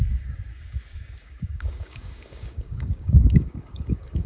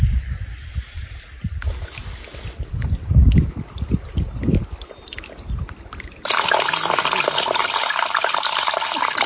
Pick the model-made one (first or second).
first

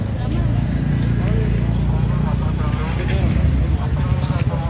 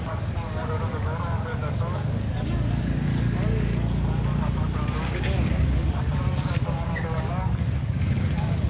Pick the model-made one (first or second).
second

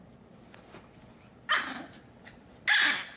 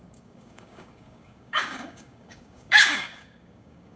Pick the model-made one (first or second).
second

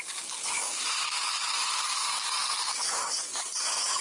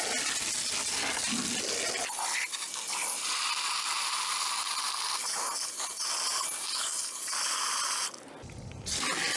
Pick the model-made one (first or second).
first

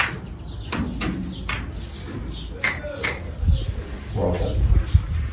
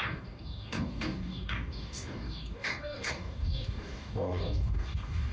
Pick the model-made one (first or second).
second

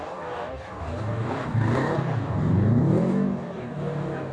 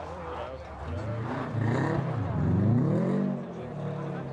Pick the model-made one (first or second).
first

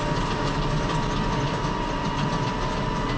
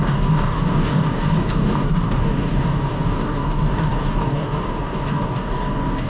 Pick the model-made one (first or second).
second